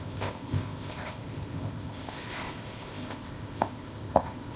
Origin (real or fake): fake